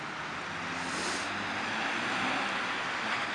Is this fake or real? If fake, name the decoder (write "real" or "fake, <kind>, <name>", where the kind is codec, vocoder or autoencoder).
real